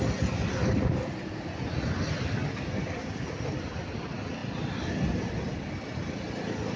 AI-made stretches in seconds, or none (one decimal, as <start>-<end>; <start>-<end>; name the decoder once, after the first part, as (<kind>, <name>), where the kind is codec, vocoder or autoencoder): none